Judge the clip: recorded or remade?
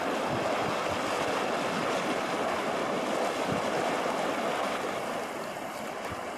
recorded